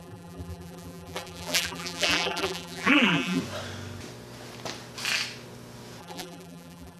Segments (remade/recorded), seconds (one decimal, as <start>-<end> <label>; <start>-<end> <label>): 0.0-3.4 remade; 3.4-6.0 recorded; 6.0-7.0 remade